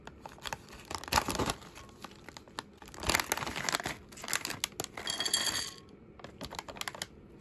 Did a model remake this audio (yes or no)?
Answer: no